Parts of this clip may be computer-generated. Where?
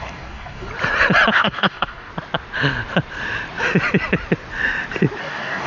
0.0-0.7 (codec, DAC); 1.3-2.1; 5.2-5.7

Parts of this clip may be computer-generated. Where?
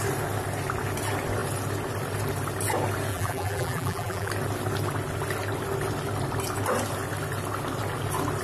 3.1-4.3 (vocoder, BigVGAN v2)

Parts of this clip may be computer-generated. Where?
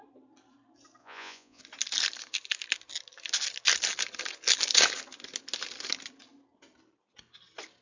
1.0-1.6 (vocoder, Vocos)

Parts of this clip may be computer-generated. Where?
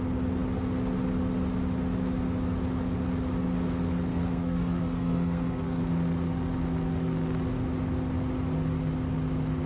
4.1-5.8 (codec, SNAC)